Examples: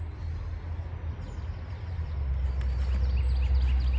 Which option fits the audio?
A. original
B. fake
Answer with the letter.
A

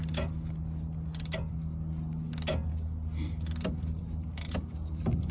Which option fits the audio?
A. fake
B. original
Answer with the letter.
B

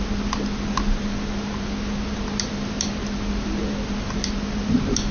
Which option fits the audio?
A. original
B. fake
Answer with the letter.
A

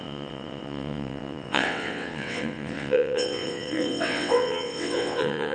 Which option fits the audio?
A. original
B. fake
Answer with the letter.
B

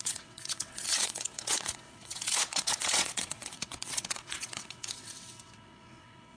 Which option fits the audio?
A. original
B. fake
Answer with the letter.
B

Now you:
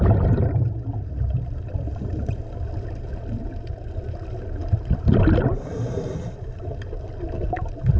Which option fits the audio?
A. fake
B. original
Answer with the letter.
B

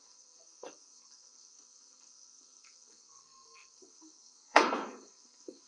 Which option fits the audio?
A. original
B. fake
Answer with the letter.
B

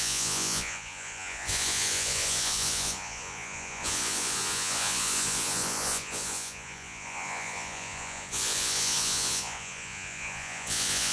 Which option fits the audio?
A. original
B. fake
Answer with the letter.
B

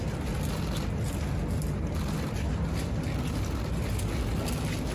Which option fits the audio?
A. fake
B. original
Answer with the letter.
B